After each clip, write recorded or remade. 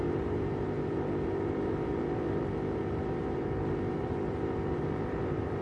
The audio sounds remade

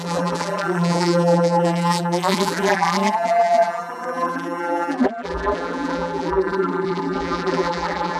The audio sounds remade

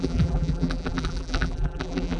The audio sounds remade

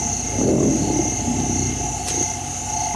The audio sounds recorded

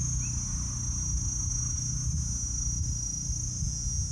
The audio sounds recorded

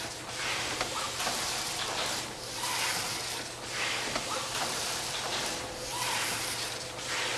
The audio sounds remade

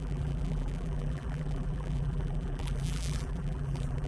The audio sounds remade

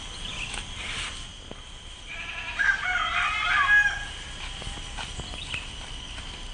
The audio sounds recorded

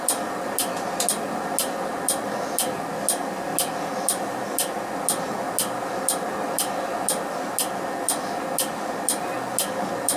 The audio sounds recorded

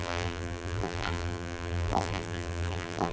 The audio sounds remade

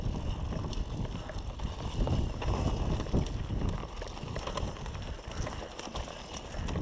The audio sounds recorded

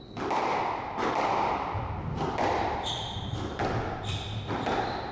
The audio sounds recorded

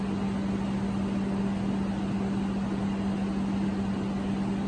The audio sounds recorded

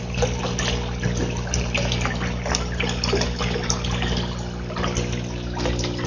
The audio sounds recorded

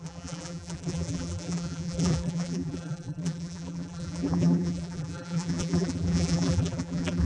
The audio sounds remade